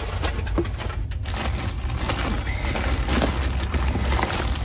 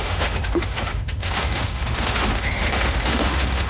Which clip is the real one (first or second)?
first